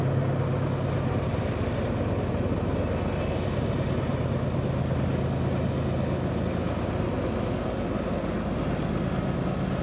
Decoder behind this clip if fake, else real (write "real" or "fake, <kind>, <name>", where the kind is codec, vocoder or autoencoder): real